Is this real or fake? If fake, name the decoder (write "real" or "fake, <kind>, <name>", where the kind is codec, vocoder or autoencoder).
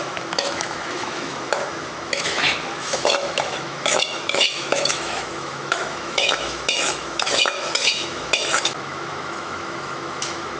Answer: fake, autoencoder, DAC-VAE